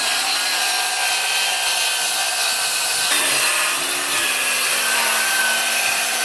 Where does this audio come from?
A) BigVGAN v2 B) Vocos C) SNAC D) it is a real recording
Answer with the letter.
A